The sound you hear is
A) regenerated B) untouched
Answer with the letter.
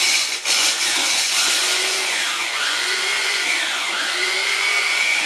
A